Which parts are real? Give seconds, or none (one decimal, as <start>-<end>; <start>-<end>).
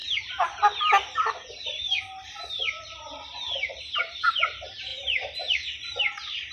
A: 0.0-3.7; 4.9-6.0